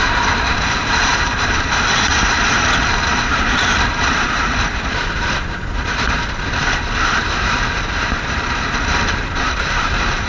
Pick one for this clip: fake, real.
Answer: fake